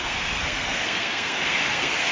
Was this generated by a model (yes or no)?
yes